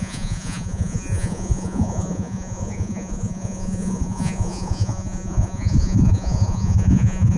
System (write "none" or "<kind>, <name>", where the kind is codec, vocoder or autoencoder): vocoder, Vocos